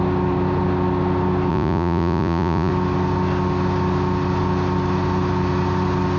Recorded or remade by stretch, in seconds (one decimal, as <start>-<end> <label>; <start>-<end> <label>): 0.0-1.5 recorded; 1.5-2.7 remade; 2.7-6.2 recorded